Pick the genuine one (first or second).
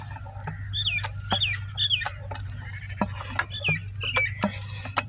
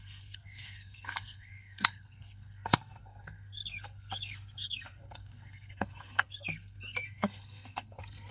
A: first